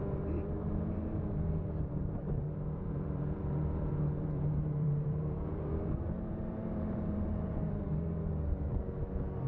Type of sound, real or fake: fake